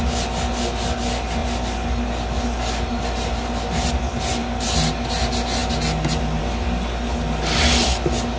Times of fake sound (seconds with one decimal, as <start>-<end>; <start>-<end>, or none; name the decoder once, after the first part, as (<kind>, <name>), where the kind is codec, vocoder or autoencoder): none